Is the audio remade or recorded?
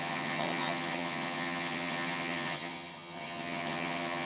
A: remade